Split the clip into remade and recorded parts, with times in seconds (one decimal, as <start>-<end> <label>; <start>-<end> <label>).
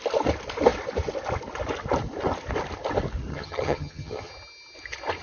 0.0-3.3 recorded; 3.3-4.3 remade; 4.3-5.2 recorded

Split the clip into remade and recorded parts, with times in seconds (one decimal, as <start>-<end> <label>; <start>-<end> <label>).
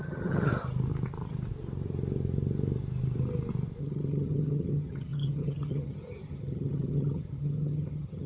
0.0-0.5 remade; 0.5-3.8 recorded; 3.8-8.3 remade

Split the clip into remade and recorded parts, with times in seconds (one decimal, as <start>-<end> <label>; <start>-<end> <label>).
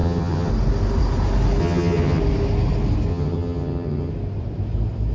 0.0-0.5 remade; 0.5-1.6 recorded; 1.6-2.2 remade; 2.2-3.1 recorded; 3.1-4.1 remade; 4.1-5.1 recorded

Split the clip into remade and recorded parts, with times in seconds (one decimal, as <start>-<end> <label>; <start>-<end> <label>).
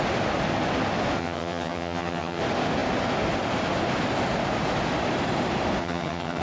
0.0-1.2 recorded; 1.2-2.4 remade; 2.4-5.8 recorded; 5.8-6.4 remade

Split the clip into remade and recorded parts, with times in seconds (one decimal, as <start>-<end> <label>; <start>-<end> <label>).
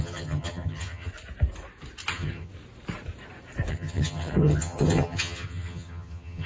0.0-1.1 remade; 1.1-2.1 recorded; 2.1-2.5 remade; 2.5-3.7 recorded; 3.7-6.5 remade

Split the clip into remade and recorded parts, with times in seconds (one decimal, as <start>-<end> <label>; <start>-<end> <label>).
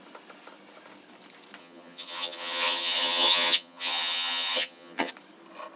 0.0-1.6 recorded; 1.6-5.1 remade; 5.1-5.8 recorded